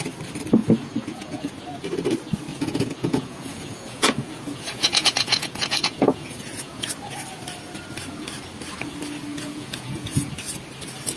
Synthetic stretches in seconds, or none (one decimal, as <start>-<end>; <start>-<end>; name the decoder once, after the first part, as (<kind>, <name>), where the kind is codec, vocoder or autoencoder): 0.6-1.5 (vocoder, Vocos); 2.5-6.9; 9.3-10.3